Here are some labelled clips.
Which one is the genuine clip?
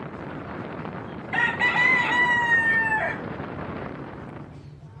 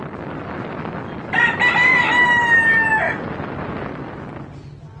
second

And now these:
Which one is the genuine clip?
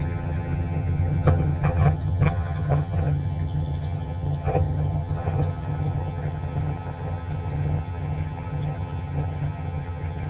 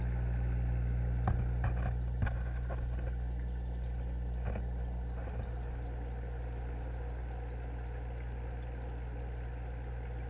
second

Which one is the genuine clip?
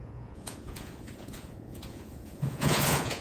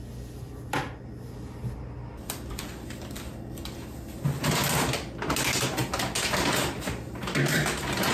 second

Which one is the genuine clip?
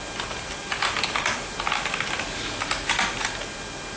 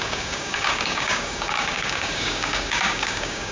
first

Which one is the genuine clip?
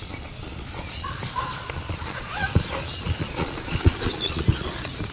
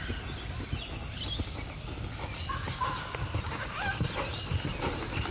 second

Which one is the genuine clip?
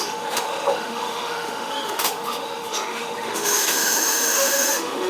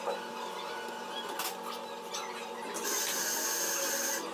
second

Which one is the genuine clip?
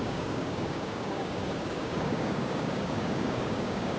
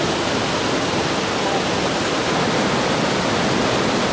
second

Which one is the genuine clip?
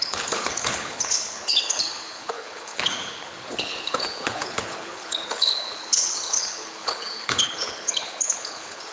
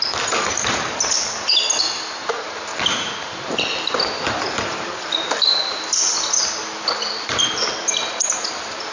second